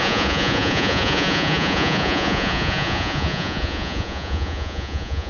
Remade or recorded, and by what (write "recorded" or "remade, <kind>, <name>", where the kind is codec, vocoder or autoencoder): remade, vocoder, Vocos